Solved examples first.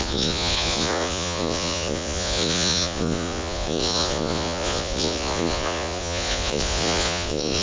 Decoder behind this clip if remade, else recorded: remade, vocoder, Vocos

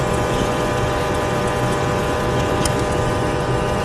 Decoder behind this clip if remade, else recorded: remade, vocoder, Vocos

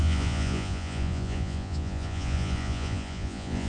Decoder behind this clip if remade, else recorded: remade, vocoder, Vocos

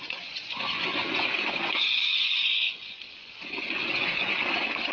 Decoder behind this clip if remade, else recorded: remade, vocoder, Vocos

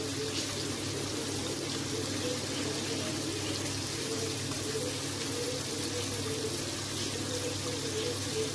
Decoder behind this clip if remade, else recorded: recorded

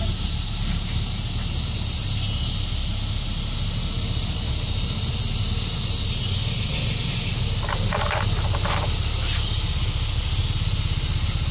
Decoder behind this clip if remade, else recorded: recorded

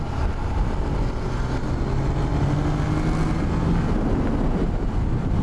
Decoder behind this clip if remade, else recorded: recorded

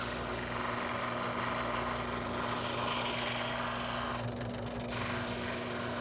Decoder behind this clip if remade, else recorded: recorded